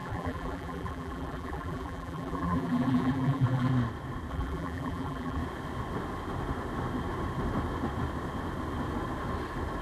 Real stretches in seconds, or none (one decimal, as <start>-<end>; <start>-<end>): 3.7-4.3; 5.4-9.8